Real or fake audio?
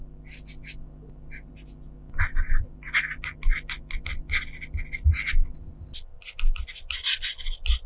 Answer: real